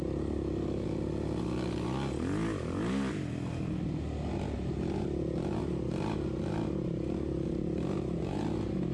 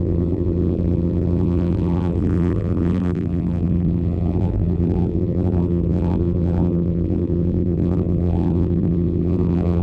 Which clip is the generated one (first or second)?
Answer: second